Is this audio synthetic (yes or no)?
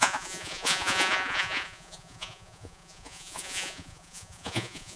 yes